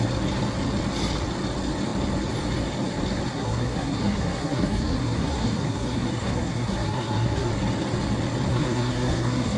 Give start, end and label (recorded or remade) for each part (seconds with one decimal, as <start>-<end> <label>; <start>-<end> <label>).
0.0-3.3 recorded; 3.3-7.5 remade; 7.5-8.5 recorded; 8.5-9.6 remade